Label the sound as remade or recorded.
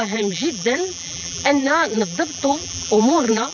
remade